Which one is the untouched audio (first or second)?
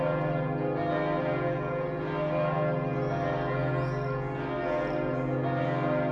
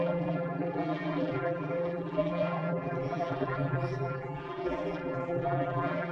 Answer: first